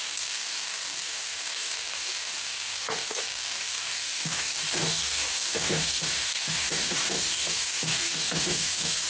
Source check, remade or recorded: remade